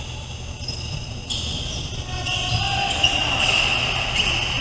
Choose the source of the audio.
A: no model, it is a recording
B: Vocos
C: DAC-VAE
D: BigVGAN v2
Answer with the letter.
A